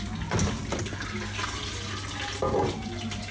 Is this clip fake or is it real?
real